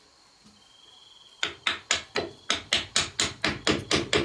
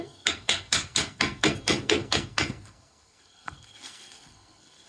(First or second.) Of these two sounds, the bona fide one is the first